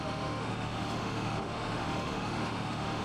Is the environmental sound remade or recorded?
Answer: remade